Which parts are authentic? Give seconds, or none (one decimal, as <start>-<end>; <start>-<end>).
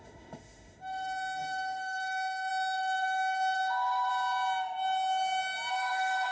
4.1-5.7